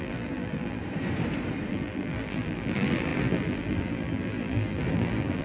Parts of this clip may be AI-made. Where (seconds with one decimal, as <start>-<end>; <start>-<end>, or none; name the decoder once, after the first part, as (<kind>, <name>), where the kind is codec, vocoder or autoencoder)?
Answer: 0.0-0.8 (vocoder, BigVGAN v2); 1.7-5.4